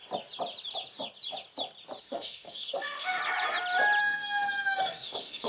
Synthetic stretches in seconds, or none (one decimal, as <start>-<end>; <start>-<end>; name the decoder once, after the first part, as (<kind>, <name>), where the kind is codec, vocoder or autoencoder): 2.0-3.2 (autoencoder, DAC-VAE); 4.0-5.5